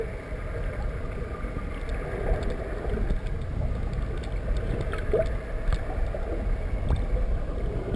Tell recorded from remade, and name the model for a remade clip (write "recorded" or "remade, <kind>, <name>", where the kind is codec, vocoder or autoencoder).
recorded